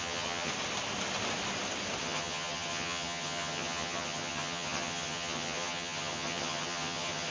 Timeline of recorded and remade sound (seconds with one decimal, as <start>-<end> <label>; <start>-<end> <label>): 0.0-0.5 remade; 0.5-2.0 recorded; 2.0-7.3 remade